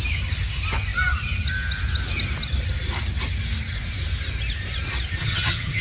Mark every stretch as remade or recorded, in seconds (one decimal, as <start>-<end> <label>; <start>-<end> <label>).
0.0-5.2 recorded; 5.2-5.8 remade

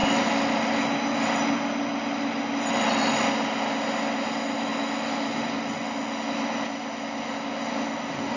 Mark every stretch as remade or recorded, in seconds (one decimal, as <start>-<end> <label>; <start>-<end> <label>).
0.0-8.4 recorded

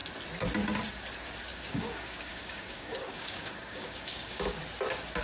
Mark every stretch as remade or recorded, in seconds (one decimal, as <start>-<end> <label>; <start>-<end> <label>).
0.0-1.5 recorded; 1.5-4.6 remade; 4.6-5.2 recorded

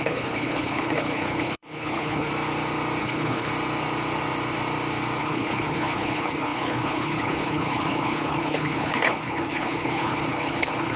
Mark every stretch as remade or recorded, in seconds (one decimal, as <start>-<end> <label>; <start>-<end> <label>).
0.0-2.3 remade; 2.3-3.0 recorded; 3.0-3.5 remade; 3.5-5.2 recorded; 5.2-11.0 remade

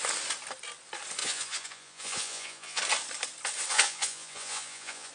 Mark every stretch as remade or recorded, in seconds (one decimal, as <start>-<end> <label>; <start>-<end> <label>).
0.0-1.2 recorded; 1.2-2.8 remade; 2.8-3.7 recorded; 3.7-5.1 remade